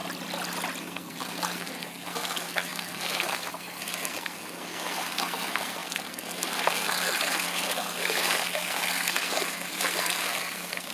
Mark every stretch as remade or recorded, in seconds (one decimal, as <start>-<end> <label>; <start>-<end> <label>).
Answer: 0.0-0.8 recorded; 0.8-10.9 remade